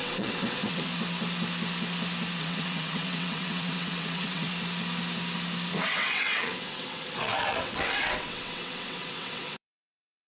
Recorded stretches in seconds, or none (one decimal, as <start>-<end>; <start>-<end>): 0.9-2.4; 4.5-5.7